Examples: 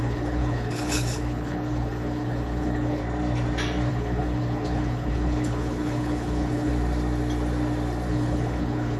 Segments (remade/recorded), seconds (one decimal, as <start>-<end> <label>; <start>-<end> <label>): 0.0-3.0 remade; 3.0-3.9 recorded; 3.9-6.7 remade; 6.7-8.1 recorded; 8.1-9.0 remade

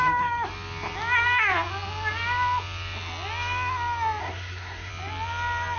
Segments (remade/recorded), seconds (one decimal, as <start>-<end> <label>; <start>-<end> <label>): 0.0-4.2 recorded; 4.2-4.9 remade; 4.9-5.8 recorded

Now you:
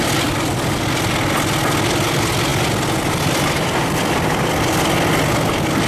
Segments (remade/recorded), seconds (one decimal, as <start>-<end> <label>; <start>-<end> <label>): 0.0-5.9 recorded

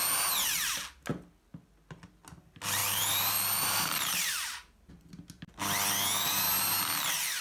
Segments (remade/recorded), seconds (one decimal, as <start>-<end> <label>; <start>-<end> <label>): 0.0-2.8 recorded; 2.8-4.9 remade; 4.9-7.4 recorded